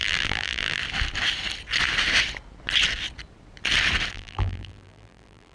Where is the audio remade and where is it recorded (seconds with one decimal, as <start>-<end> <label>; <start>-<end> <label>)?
0.0-0.8 remade; 0.8-4.1 recorded; 4.1-5.5 remade